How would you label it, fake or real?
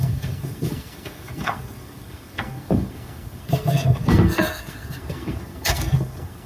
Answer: fake